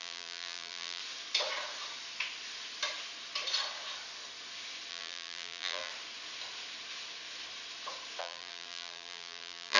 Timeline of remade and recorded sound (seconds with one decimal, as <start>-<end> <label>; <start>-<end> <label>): 0.0-1.0 remade; 1.0-4.9 recorded; 4.9-5.9 remade; 5.9-8.2 recorded; 8.2-9.8 remade